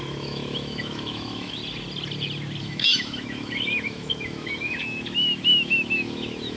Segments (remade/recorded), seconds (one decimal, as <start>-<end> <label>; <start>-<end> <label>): 0.0-1.6 remade; 1.6-2.6 recorded; 2.6-6.6 remade

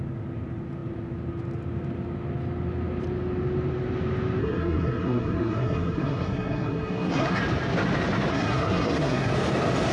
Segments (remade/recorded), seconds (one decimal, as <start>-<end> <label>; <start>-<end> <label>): 0.0-4.4 recorded; 4.4-7.4 remade; 7.4-8.3 recorded; 8.3-9.3 remade; 9.3-9.9 recorded

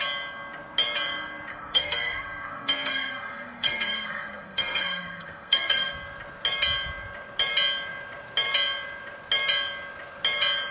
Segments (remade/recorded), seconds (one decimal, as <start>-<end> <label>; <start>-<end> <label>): 0.0-1.5 recorded; 1.5-5.9 remade; 5.9-10.7 recorded

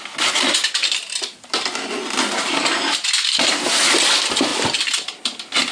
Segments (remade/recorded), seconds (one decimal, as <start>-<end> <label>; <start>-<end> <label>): 0.0-5.7 recorded